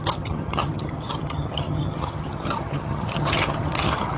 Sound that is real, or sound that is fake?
fake